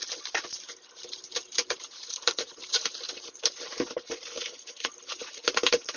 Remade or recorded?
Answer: remade